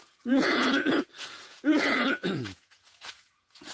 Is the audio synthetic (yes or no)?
yes